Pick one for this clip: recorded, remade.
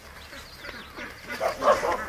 recorded